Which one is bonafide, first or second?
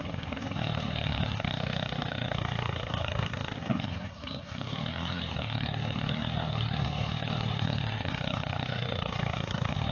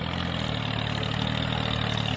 second